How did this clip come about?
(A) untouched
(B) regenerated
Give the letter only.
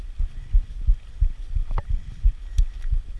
A